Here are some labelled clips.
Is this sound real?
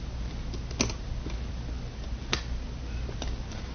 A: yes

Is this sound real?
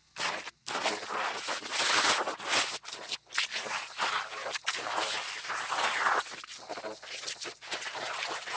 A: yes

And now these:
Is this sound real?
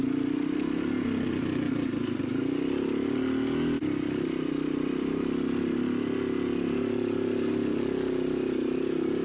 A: yes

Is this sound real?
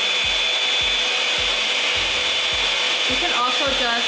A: yes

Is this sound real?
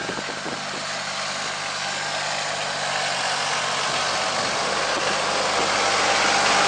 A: yes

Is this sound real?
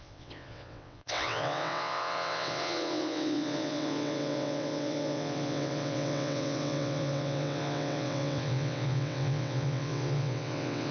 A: no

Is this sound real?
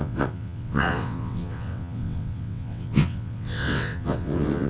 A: no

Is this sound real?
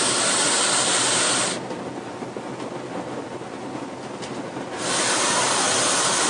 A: yes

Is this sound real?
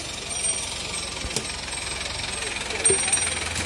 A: yes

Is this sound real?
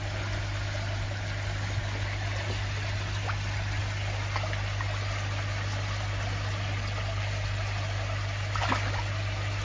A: yes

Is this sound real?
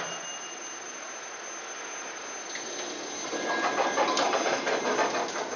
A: yes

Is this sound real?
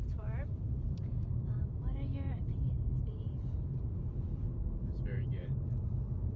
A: no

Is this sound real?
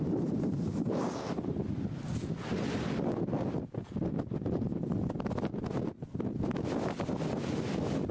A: yes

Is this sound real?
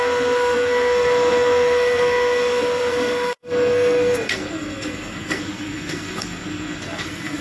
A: no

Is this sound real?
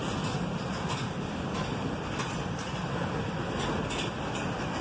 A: yes